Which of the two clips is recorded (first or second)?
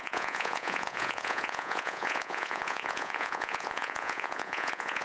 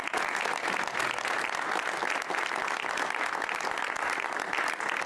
second